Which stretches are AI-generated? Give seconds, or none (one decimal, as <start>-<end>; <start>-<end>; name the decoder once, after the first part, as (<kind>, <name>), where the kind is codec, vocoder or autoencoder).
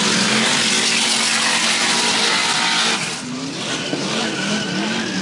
none